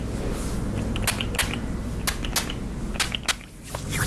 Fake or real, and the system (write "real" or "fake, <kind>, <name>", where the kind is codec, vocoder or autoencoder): real